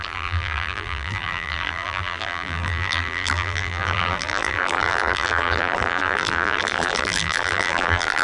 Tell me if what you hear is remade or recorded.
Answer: remade